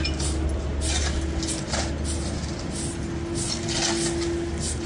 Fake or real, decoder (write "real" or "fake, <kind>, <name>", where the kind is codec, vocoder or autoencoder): real